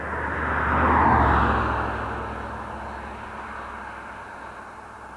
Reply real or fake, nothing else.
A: real